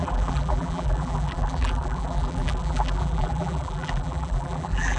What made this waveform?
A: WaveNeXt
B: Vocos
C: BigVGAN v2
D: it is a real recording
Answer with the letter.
C